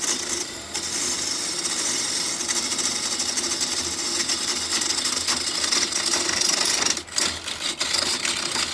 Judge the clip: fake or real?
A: real